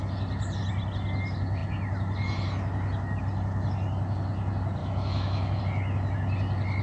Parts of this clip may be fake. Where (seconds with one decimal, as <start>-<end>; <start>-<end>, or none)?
4.8-5.6